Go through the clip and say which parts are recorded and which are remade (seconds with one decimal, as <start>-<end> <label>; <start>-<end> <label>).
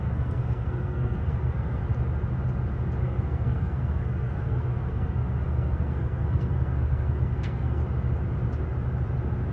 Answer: 0.0-1.8 remade; 1.8-3.0 recorded; 3.0-7.8 remade; 7.8-9.5 recorded